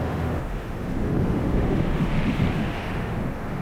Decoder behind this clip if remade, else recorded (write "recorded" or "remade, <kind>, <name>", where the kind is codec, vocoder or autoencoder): remade, autoencoder, DAC-VAE